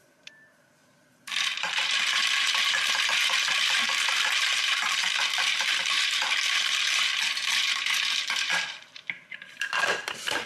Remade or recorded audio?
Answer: remade